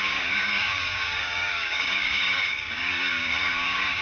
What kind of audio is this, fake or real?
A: fake